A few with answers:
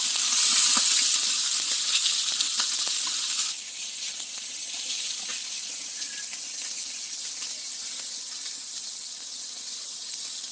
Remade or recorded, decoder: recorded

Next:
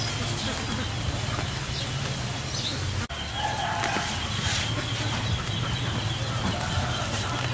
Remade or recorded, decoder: recorded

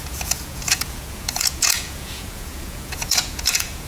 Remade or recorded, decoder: remade, vocoder, Vocos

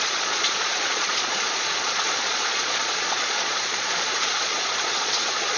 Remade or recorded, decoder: remade, vocoder, Vocos